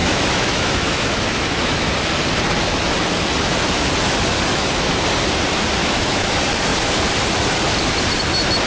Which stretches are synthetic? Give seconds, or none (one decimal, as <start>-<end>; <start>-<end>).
0.0-1.9; 4.5-5.1; 5.8-6.3